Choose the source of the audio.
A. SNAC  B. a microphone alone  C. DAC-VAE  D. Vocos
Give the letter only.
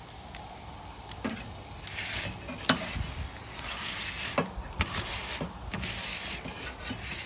B